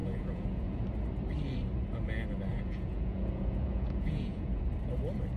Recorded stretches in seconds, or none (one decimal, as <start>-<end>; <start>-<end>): 0.8-2.5; 4.6-5.4